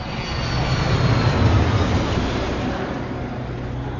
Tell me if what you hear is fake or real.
real